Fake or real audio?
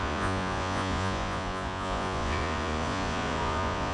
fake